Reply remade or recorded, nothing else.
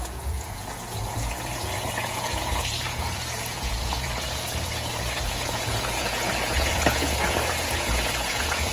remade